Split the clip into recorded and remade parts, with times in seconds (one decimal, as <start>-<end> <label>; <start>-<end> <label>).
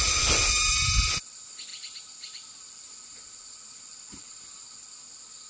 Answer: 0.0-5.5 recorded